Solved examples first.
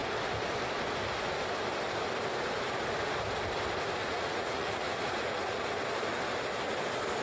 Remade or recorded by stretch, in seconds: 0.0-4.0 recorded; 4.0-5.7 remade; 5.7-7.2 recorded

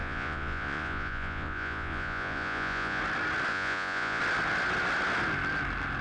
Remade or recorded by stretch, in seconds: 0.0-3.0 remade; 3.0-3.5 recorded; 3.5-4.2 remade; 4.2-6.0 recorded

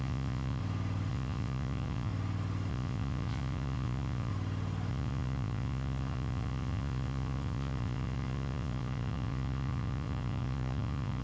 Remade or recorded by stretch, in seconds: 0.0-0.6 remade; 0.6-1.1 recorded; 1.1-2.1 remade; 2.1-2.7 recorded; 2.7-4.3 remade; 4.3-4.9 recorded; 4.9-11.2 remade

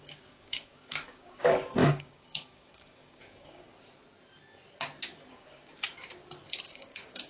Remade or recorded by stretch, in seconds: 0.0-3.7 remade; 3.7-5.3 recorded; 5.3-5.7 remade; 5.7-6.7 recorded; 6.7-7.3 remade

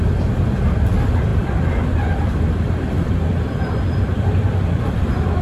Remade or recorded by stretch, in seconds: 0.0-5.4 remade